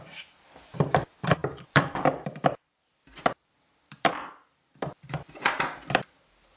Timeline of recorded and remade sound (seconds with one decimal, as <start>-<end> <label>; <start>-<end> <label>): 0.0-1.4 recorded; 1.4-5.4 remade; 5.4-6.6 recorded